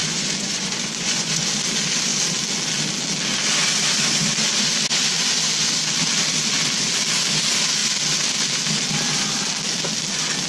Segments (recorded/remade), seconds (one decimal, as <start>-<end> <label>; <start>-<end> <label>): 0.0-1.4 remade; 1.4-10.5 recorded